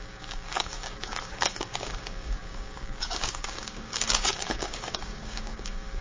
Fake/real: fake